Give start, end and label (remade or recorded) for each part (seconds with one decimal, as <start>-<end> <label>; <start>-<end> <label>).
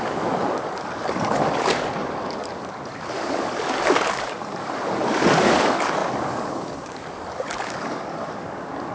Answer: 0.0-8.9 remade